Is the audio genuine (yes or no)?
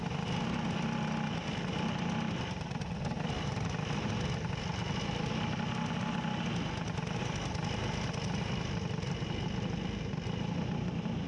yes